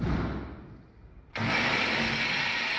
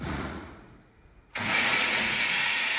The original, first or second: first